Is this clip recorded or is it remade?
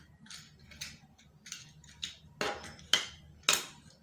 recorded